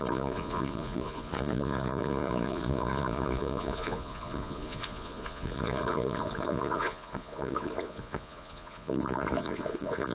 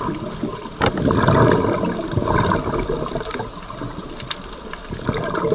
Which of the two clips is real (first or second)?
second